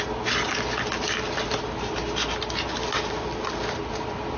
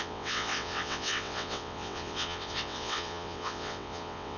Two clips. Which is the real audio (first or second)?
first